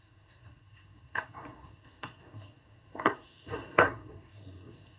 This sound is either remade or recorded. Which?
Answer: remade